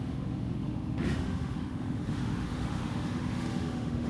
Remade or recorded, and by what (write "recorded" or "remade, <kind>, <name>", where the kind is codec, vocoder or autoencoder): remade, autoencoder, DAC-VAE